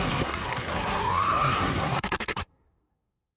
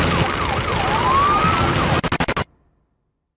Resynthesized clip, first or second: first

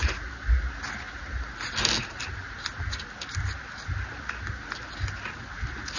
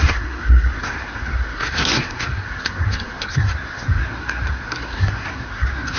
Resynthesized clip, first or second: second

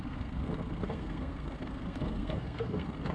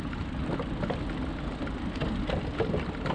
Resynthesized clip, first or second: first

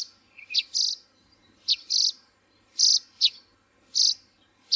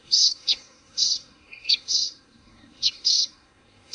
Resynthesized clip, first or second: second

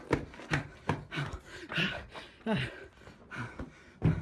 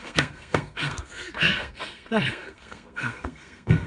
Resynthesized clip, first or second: second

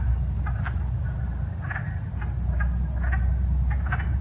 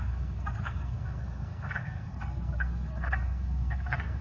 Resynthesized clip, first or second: second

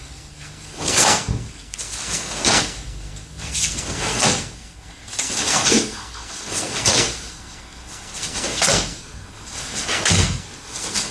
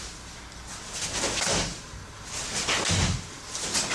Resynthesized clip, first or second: first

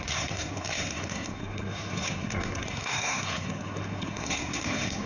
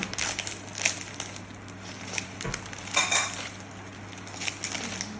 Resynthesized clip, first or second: first